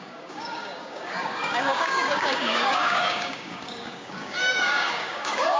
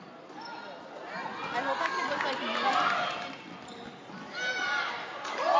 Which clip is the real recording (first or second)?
second